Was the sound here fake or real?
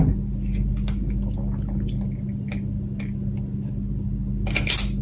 real